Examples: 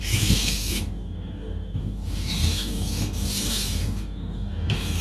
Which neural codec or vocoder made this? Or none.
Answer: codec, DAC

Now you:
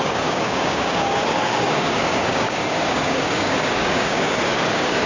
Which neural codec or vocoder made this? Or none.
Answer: codec, DAC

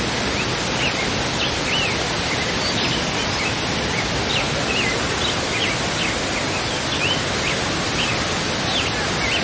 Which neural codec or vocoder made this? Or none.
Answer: none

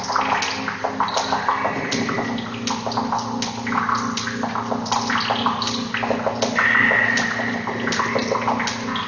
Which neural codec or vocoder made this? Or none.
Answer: none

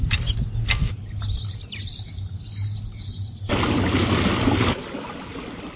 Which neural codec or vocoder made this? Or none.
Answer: none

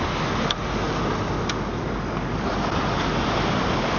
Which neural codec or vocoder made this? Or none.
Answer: none